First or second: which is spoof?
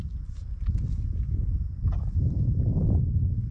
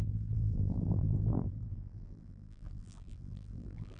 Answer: second